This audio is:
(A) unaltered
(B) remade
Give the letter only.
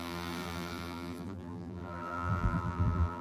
B